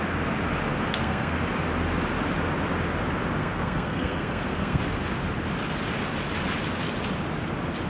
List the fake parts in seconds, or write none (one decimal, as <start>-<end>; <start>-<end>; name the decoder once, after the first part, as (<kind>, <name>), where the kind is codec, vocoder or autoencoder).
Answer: 0.7-1.4 (codec, SNAC); 3.4-4.8